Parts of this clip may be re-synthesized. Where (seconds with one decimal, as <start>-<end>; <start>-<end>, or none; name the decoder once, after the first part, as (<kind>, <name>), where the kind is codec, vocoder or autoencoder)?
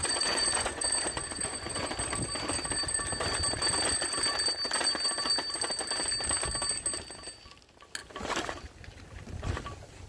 0.0-1.9 (vocoder, Vocos)